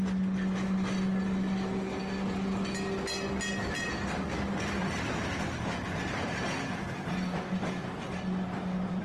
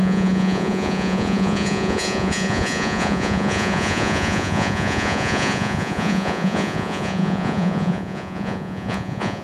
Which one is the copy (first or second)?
second